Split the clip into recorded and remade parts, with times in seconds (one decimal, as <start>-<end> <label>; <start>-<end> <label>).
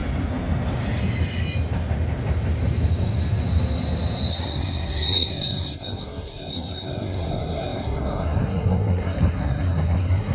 0.0-4.3 recorded; 4.3-10.3 remade